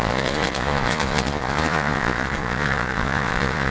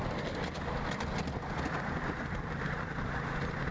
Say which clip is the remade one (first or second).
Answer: first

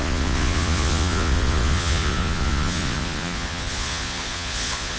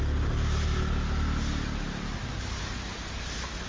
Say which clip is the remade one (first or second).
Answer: first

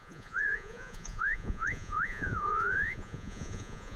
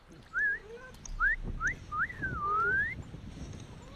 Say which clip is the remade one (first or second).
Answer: first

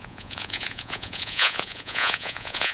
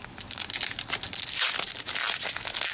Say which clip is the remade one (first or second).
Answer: first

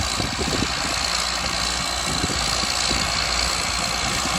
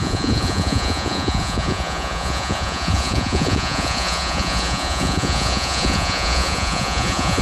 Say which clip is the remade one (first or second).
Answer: second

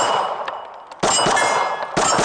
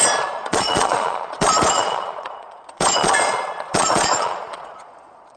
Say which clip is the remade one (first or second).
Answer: second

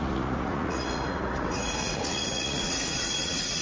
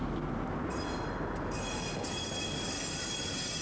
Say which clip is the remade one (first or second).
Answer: first